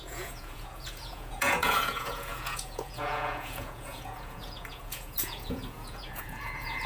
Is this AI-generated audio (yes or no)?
yes